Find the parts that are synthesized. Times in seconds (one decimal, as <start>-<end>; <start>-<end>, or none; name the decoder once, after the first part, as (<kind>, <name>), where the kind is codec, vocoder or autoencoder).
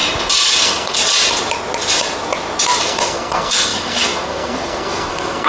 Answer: 0.6-1.0 (codec, SNAC); 2.8-5.5